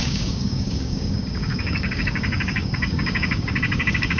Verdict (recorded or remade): remade